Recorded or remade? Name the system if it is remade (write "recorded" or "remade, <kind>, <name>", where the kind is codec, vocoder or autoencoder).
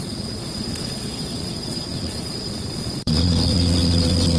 remade, vocoder, Vocos